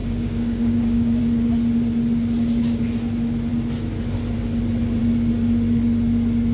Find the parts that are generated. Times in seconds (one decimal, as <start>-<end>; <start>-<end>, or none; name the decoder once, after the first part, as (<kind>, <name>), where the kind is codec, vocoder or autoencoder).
0.0-1.2 (codec, DAC)